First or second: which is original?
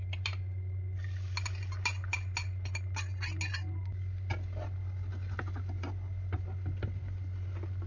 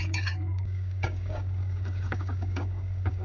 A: first